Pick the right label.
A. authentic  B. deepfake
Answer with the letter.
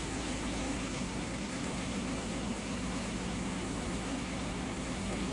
B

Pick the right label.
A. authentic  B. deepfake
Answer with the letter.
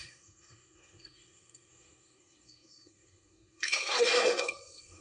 B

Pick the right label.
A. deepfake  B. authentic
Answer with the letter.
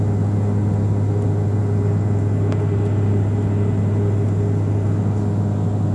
B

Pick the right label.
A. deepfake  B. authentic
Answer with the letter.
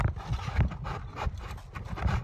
B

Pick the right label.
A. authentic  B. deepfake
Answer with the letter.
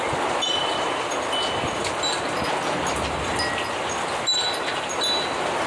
A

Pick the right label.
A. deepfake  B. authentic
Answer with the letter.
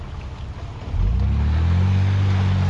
B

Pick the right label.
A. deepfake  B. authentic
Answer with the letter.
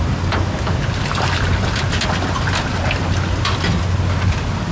B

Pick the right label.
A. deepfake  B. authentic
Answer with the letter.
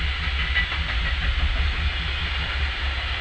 B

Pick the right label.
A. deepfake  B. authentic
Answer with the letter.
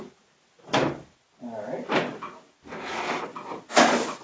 B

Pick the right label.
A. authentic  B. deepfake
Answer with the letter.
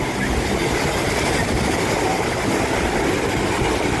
A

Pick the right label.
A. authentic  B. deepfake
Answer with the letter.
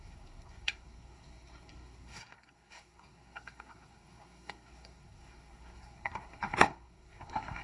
B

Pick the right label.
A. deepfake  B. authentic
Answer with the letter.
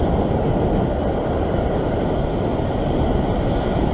B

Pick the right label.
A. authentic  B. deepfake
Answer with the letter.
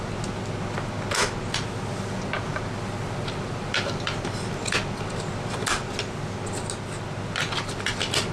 A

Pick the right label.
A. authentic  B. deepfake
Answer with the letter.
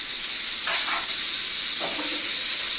A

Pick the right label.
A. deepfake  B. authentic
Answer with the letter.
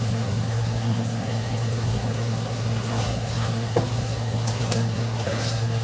A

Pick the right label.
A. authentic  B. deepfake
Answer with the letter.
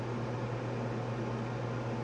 A